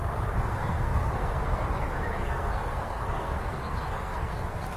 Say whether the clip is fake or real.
fake